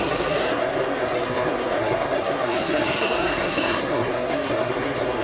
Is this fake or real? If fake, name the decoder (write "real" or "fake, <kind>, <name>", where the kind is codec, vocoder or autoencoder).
fake, codec, SNAC